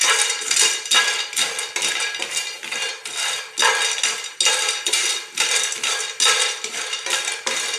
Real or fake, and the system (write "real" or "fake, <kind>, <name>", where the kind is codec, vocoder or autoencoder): real